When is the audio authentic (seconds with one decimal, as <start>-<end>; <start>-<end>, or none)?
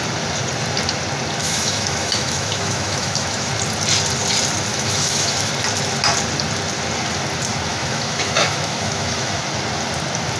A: 0.0-1.4; 3.5-4.7; 5.5-7.7; 9.4-10.4